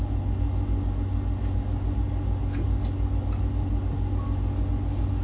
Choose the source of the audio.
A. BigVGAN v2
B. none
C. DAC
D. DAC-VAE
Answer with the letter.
B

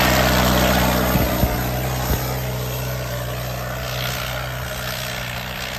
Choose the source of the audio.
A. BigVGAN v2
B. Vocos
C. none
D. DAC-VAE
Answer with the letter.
C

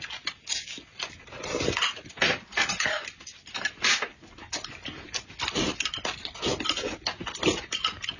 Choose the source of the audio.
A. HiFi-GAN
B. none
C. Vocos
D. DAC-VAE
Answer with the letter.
B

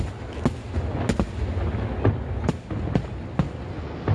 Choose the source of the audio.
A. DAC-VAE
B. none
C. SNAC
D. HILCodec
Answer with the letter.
B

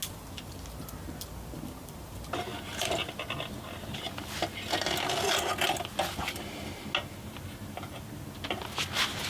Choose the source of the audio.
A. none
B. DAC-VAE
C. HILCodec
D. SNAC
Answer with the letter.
A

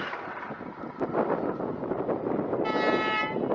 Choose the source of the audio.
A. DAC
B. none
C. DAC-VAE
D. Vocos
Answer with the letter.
B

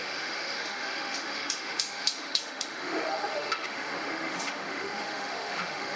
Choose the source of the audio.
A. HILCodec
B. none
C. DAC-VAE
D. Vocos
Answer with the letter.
C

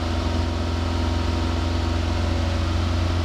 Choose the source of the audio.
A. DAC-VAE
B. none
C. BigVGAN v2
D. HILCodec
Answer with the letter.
B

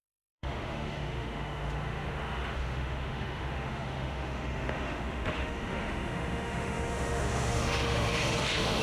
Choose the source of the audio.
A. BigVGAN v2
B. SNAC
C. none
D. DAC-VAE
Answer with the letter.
D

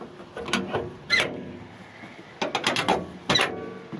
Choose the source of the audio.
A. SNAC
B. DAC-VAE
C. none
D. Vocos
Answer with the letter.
C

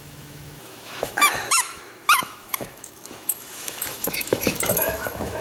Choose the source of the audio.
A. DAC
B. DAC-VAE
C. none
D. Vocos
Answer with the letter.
B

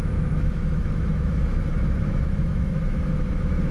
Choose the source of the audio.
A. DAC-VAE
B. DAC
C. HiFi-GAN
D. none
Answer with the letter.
A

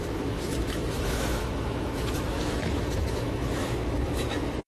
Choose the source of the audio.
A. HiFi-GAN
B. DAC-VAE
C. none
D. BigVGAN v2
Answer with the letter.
B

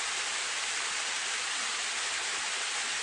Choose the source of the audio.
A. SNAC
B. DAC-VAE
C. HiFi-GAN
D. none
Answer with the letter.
D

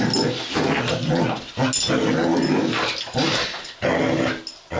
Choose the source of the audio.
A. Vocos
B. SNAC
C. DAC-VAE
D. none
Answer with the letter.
D